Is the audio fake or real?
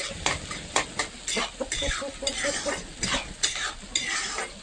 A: real